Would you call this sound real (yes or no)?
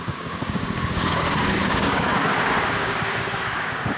no